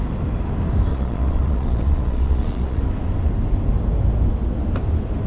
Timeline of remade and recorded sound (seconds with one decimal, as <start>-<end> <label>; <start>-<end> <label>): 0.0-0.9 recorded; 0.9-2.8 remade; 2.8-5.3 recorded